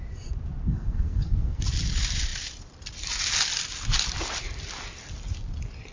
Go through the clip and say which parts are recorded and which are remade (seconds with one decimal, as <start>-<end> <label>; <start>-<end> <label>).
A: 0.0-0.6 recorded; 0.6-1.6 remade; 1.6-5.9 recorded